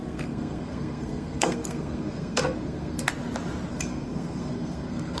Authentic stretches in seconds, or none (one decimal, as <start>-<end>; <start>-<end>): 3.1-3.7